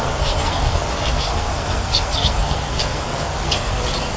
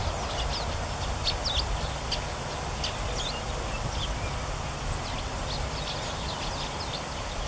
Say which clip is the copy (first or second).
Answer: first